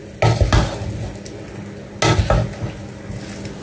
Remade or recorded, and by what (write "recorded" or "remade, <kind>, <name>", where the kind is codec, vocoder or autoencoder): recorded